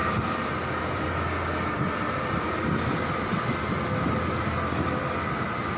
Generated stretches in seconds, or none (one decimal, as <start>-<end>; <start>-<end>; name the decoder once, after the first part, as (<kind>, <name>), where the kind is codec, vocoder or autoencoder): 0.0-3.5 (vocoder, BigVGAN v2)